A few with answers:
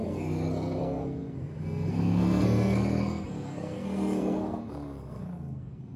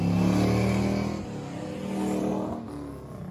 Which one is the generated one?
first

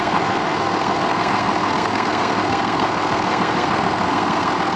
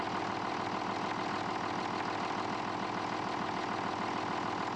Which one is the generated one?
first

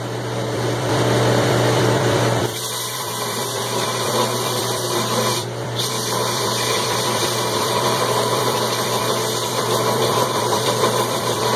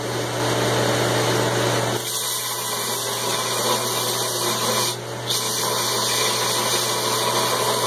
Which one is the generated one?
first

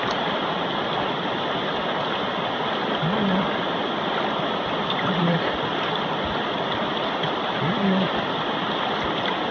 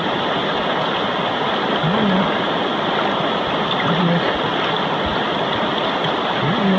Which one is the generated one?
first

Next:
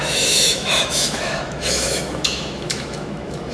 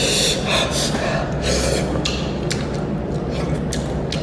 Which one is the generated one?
first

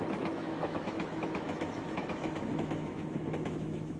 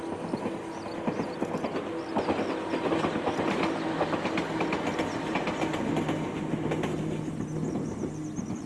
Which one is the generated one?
first